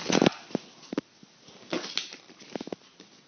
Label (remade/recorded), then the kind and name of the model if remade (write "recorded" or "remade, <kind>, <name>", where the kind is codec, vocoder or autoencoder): recorded